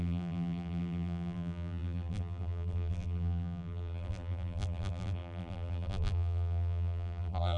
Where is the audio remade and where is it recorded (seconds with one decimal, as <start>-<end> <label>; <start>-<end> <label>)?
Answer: 0.0-7.6 remade